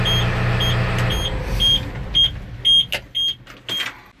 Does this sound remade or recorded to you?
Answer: recorded